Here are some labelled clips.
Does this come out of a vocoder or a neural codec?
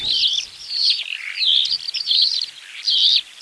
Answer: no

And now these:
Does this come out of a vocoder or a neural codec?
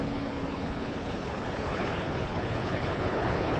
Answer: yes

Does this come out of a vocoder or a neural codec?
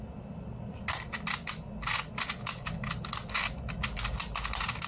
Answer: no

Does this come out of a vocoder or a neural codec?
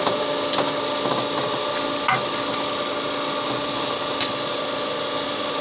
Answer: no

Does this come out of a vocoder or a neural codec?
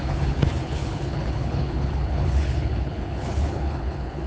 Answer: yes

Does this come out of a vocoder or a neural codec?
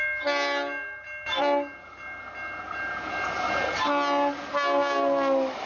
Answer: no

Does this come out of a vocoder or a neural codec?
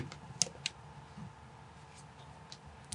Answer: no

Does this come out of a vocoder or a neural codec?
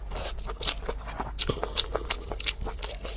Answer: no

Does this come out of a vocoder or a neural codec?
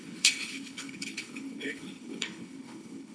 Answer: yes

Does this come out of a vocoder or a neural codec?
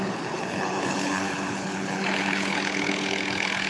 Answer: yes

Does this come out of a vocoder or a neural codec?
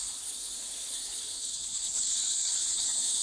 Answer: yes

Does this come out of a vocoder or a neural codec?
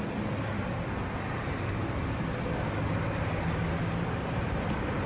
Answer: no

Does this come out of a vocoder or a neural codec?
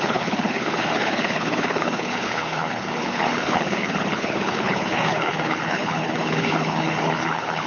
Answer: yes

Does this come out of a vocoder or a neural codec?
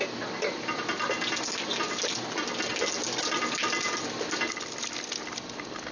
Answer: no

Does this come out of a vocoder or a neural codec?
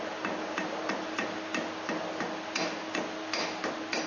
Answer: no